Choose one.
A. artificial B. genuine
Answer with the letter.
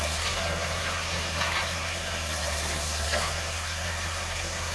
A